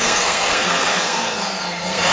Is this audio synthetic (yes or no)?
yes